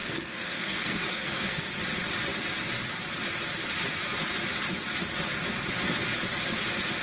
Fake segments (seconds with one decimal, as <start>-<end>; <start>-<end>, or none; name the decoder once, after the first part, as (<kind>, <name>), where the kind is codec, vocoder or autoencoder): 0.0-1.7 (codec, SNAC)